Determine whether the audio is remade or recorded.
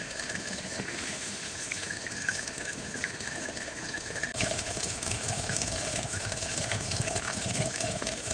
remade